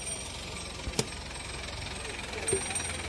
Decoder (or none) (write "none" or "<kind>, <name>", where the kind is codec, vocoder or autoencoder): none